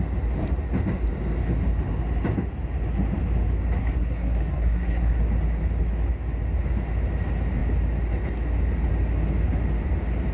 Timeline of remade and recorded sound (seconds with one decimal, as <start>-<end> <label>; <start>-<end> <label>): 0.0-3.8 recorded; 3.8-5.2 remade; 5.2-10.3 recorded